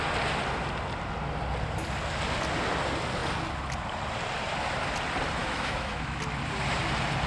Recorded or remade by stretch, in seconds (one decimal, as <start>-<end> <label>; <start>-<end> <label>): 0.0-5.4 recorded; 5.4-6.2 remade; 6.2-7.3 recorded